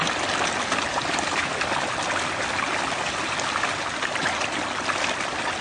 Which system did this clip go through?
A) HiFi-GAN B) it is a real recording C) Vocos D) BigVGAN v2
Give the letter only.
B